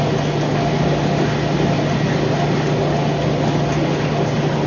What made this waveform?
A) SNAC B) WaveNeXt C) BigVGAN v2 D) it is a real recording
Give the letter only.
D